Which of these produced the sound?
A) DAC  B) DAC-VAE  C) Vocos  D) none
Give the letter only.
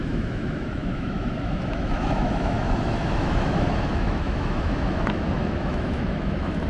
B